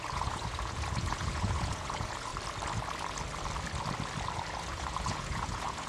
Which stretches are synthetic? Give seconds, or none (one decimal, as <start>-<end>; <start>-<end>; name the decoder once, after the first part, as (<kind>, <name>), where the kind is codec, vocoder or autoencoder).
0.0-2.3 (vocoder, Vocos); 4.6-5.9